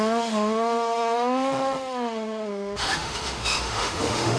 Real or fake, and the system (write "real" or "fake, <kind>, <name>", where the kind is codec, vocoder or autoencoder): fake, autoencoder, DAC-VAE